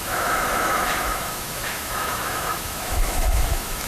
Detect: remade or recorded remade